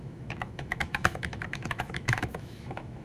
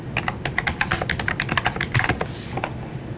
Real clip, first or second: second